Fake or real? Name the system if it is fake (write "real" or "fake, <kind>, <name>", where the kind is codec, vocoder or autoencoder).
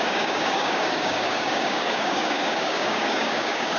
fake, codec, DAC